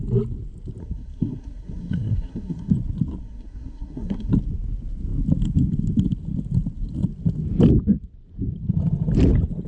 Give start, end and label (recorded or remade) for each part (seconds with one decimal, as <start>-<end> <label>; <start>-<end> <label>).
0.0-0.8 recorded; 0.8-2.7 remade; 2.7-3.2 recorded; 3.2-4.3 remade; 4.3-9.7 recorded